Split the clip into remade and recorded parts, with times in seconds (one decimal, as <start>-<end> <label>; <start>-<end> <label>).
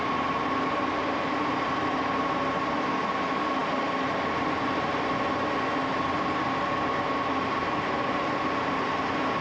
0.0-9.4 recorded